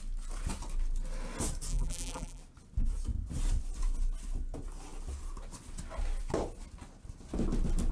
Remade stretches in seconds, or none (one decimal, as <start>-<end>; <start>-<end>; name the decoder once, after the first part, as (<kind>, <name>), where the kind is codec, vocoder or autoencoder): 1.7-2.4 (vocoder, BigVGAN v2)